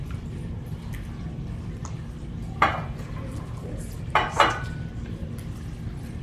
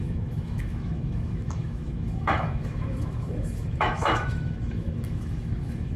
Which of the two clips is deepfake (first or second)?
second